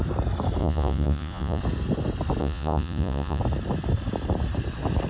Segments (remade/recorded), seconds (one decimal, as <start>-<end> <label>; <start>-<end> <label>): 0.0-0.6 recorded; 0.6-1.6 remade; 1.6-2.4 recorded; 2.4-3.4 remade; 3.4-5.1 recorded